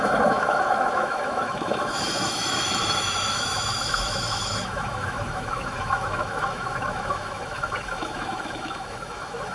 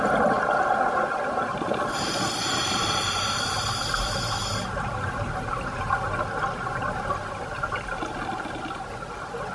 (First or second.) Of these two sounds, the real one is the second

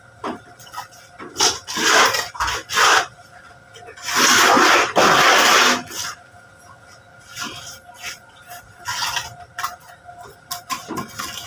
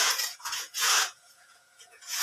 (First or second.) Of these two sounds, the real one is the first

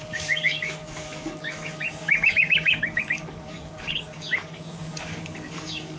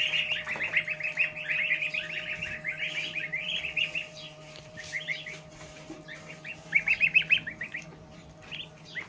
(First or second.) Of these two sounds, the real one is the second